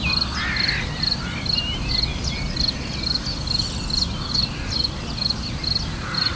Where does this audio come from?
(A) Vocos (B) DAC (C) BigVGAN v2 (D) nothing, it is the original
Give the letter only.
D